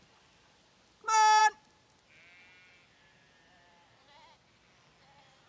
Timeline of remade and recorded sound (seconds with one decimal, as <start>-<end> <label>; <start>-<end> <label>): 0.0-5.5 recorded